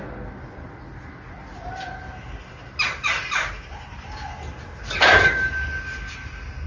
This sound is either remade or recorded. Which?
recorded